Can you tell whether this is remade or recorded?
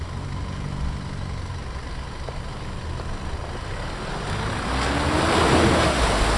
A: recorded